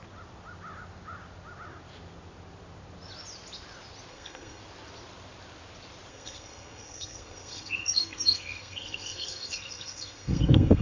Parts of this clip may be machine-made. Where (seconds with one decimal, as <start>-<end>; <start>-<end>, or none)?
4.1-4.6; 6.1-10.8